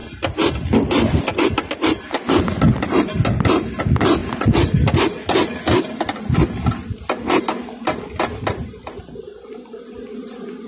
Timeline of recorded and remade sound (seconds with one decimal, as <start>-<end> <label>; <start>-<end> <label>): 0.0-10.7 recorded